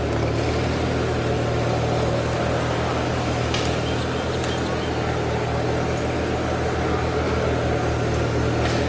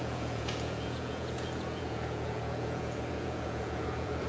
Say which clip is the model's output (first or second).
second